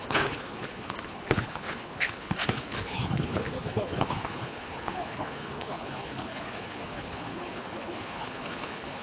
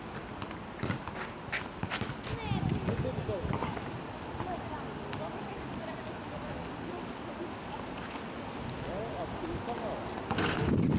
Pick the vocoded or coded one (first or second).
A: first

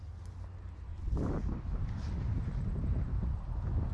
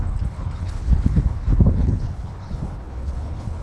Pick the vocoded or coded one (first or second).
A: second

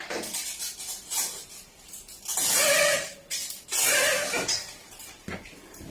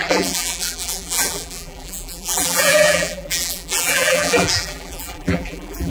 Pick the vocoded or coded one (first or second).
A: second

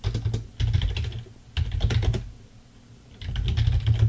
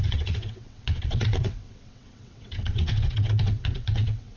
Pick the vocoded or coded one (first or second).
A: second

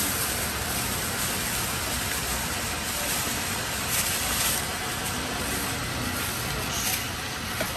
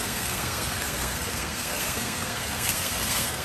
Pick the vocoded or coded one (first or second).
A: second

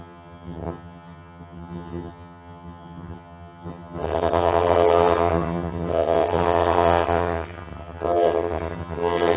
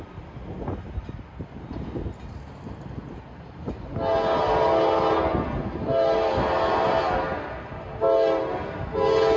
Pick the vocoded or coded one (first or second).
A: first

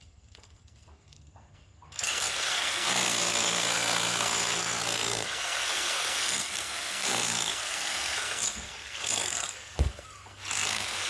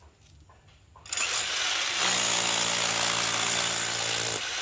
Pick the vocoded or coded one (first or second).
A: first